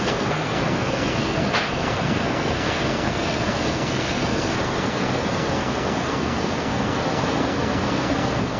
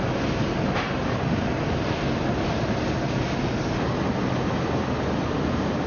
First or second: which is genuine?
second